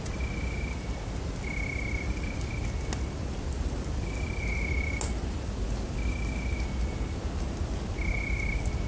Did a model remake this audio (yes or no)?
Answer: no